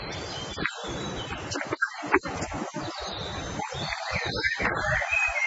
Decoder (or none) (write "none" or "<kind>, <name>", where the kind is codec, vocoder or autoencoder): none